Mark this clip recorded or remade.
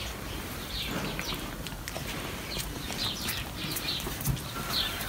remade